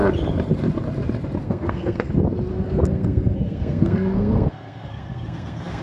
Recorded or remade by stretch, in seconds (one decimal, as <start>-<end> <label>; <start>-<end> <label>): 0.0-1.4 recorded; 1.4-2.1 remade; 2.1-2.5 recorded; 2.5-5.8 remade